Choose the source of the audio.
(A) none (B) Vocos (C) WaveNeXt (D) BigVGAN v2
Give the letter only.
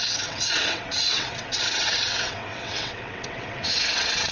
C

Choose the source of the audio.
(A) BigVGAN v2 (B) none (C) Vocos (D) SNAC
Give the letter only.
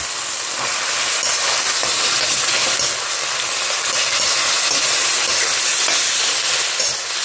B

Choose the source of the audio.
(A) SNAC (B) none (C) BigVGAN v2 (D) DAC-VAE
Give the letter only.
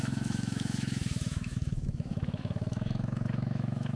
D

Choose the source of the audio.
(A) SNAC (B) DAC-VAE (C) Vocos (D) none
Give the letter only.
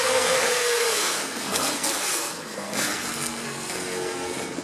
A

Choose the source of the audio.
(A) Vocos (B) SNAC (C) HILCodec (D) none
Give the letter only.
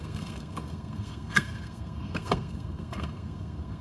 B